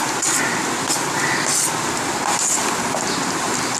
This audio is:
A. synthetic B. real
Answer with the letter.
B